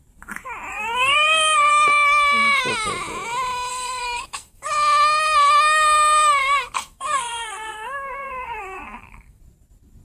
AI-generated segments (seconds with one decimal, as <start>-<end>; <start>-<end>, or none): 0.7-1.7; 3.7-4.7; 6.4-9.4